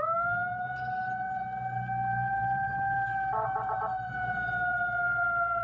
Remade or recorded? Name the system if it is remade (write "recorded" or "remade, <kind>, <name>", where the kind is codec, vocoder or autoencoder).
recorded